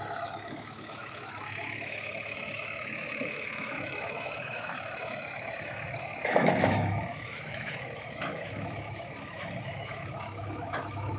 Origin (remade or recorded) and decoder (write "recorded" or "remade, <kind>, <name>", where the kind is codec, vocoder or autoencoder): remade, autoencoder, DAC-VAE